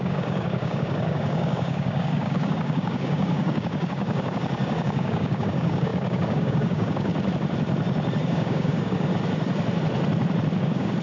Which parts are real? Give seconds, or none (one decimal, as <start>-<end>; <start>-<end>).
7.1-8.2; 9.1-10.6